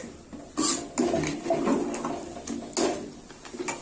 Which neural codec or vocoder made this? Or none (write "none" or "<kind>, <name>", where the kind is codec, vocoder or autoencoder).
none